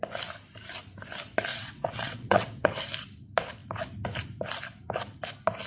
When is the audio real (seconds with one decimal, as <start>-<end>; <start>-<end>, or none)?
0.0-1.5; 2.8-5.7